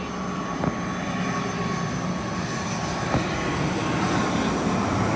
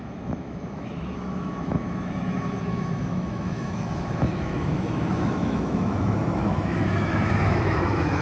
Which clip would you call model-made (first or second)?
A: second